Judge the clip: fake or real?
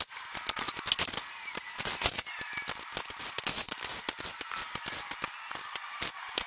real